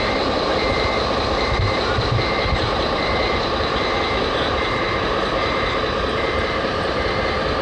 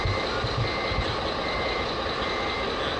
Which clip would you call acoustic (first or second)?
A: second